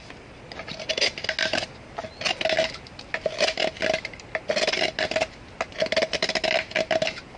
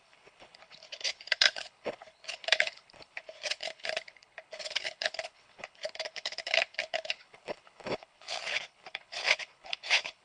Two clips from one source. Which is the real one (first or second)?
first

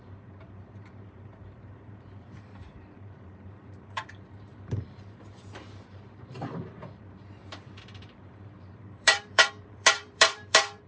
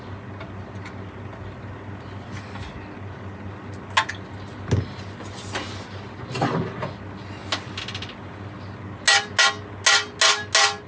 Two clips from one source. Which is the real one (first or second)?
second